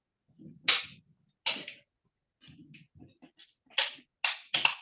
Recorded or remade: recorded